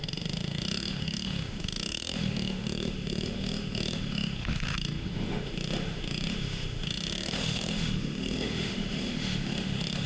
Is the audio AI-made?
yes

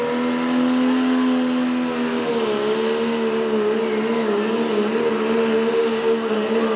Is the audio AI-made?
no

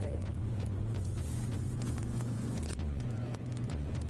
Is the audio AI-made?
yes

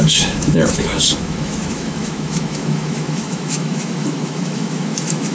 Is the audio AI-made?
yes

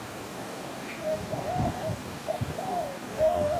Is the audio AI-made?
yes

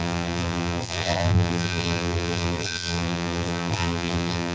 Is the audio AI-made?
yes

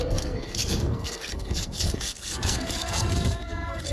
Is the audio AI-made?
yes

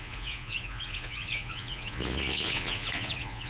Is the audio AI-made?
yes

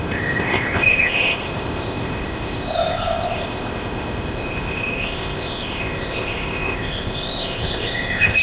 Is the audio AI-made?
yes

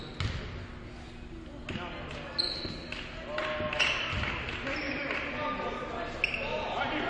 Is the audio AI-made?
no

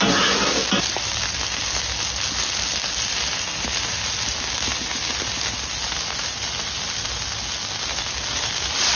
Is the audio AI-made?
no